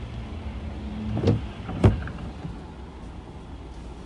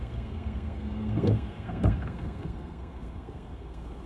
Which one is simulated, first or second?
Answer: second